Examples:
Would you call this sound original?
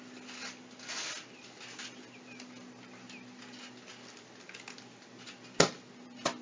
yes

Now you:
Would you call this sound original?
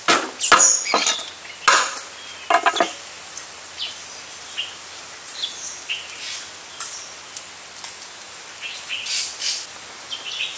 yes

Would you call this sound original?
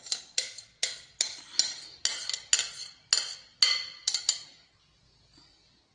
yes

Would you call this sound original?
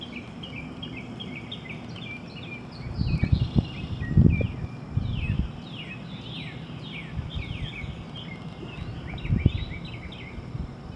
yes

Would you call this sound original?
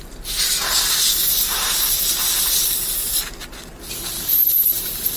yes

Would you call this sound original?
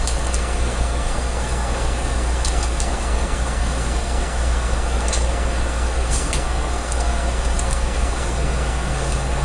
no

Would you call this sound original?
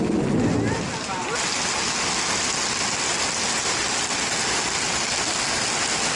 yes